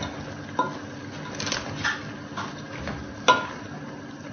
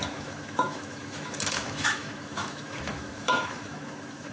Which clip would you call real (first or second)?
first